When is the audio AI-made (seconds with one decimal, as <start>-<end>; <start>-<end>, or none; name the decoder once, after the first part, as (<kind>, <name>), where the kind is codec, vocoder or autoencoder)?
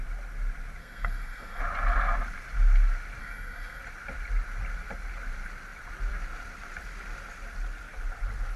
0.8-1.6 (codec, SNAC); 3.2-3.8